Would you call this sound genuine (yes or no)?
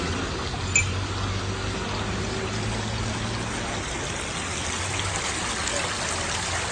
yes